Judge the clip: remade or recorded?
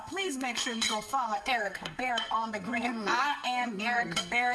remade